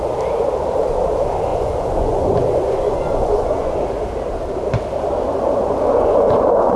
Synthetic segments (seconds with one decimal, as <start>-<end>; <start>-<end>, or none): 1.5-3.8; 5.6-6.8